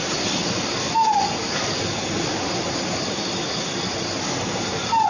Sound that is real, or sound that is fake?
real